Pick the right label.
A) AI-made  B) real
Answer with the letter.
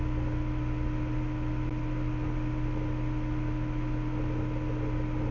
B